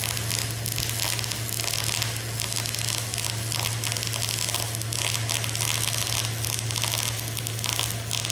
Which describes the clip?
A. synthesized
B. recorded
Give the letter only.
B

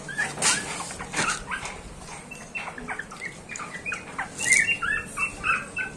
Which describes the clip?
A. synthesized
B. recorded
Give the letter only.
B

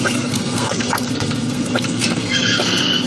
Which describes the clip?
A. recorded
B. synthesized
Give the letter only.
B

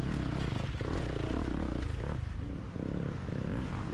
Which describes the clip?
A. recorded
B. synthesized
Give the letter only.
A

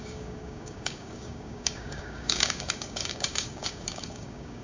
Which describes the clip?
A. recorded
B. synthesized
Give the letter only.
B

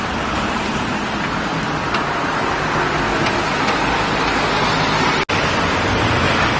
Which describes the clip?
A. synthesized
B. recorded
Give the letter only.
B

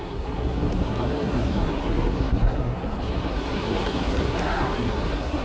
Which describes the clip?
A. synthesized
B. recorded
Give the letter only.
A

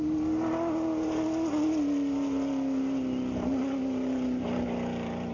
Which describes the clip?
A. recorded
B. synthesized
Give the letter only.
A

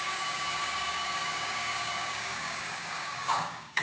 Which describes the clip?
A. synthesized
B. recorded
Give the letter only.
A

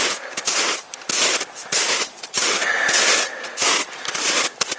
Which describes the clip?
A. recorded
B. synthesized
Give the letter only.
A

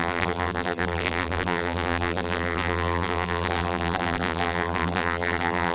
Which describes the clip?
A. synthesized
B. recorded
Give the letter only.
A